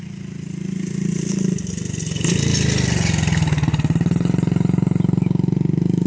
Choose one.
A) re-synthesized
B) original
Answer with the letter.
B